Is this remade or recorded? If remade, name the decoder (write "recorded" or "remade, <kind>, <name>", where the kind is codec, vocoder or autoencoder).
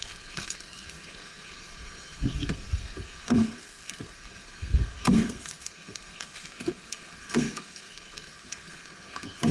remade, codec, SNAC